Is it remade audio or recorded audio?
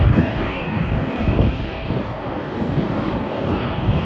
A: remade